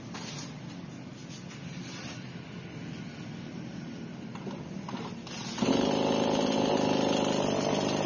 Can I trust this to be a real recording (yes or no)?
yes